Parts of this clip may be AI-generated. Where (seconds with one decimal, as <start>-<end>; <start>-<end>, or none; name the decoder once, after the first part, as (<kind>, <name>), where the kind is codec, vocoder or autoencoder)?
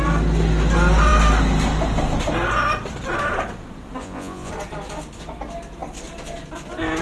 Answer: 4.0-4.5 (vocoder, Vocos)